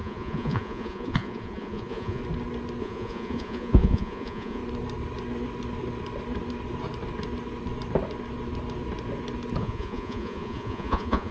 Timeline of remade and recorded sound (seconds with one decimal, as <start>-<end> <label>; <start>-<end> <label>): 0.0-2.2 remade; 2.2-2.8 recorded; 2.8-4.6 remade; 4.6-9.6 recorded; 9.6-11.3 remade